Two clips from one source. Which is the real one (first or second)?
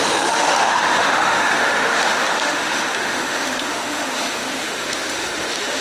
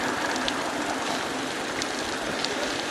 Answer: second